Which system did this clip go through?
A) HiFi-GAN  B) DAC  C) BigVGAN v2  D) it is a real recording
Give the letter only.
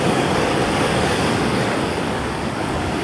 B